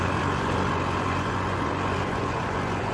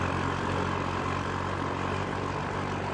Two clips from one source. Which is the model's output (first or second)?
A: first